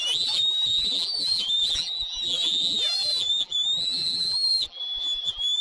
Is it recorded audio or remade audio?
remade